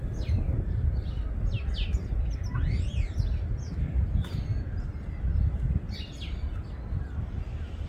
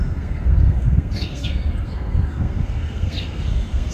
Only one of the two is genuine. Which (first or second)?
first